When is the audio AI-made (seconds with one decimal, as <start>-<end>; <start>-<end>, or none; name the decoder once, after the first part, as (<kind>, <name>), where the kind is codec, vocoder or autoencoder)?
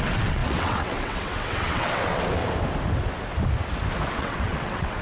0.0-2.4 (vocoder, WaveNeXt); 4.2-5.0